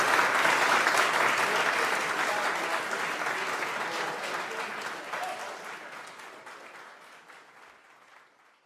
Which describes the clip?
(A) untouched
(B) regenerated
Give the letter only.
A